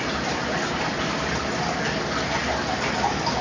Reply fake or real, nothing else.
real